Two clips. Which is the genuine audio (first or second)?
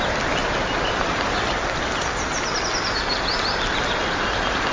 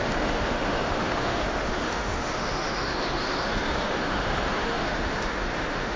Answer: first